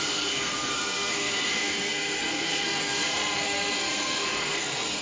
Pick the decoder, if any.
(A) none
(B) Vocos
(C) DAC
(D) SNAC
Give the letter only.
D